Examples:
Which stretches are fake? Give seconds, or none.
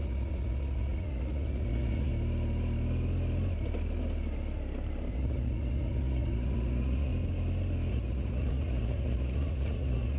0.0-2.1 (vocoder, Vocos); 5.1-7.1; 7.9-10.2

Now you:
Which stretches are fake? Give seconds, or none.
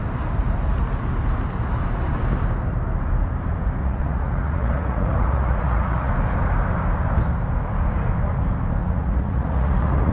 3.8-6.1 (vocoder, Vocos); 8.8-10.1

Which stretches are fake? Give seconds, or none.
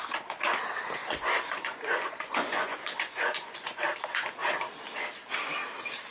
1.0-3.8 (vocoder, Vocos)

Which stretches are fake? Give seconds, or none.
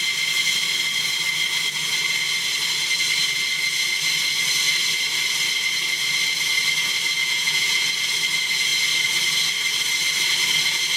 7.2-7.8 (vocoder, Vocos)